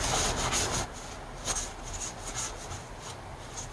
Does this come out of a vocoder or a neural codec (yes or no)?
no